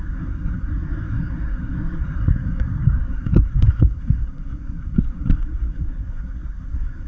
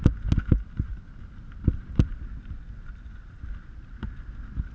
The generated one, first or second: first